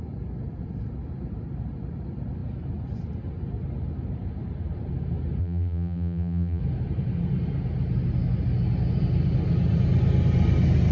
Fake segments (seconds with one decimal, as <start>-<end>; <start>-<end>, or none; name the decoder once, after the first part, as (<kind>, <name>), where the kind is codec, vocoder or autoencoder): 5.4-6.6 (vocoder, BigVGAN v2)